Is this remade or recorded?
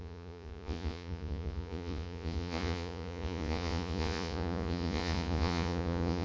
remade